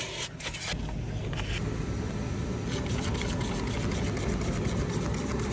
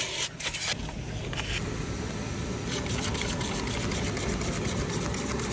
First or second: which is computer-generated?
second